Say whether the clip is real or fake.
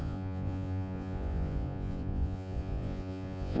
fake